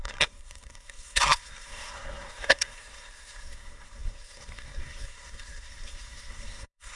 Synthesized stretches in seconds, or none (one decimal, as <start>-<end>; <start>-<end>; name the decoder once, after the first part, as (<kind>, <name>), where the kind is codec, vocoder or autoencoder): 0.0-7.0 (codec, SNAC)